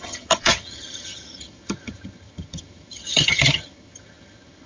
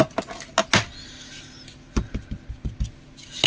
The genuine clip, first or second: second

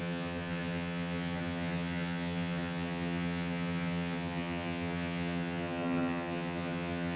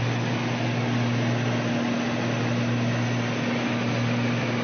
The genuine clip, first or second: second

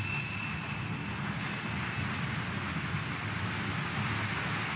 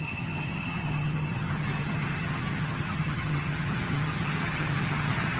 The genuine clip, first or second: first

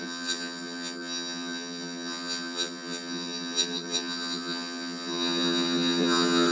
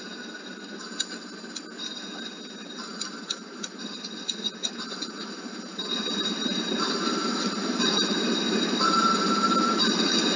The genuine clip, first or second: second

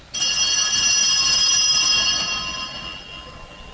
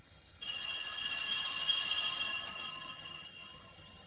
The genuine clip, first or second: first